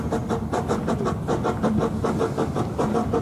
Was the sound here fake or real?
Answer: real